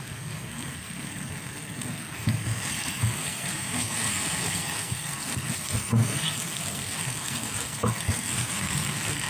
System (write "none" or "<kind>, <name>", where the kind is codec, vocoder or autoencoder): codec, SNAC